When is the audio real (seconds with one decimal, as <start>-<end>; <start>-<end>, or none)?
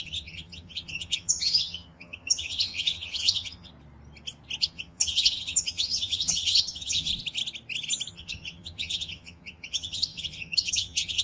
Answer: 3.7-4.6; 7.1-8.1